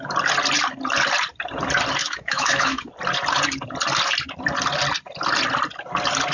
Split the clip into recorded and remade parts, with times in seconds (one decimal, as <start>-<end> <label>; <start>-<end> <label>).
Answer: 0.0-2.0 recorded; 2.0-2.9 remade; 2.9-6.3 recorded